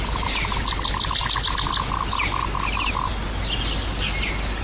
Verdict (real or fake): real